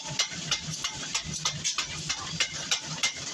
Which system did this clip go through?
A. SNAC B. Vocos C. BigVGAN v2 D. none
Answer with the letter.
D